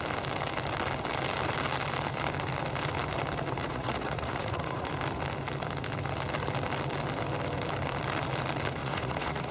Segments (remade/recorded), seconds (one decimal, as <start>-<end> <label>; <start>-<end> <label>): 0.0-3.6 recorded; 3.6-4.9 remade; 4.9-8.8 recorded; 8.8-9.5 remade